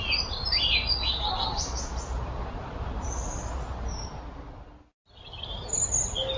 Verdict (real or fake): real